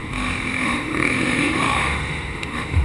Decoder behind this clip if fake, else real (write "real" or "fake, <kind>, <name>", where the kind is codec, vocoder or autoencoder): fake, autoencoder, DAC-VAE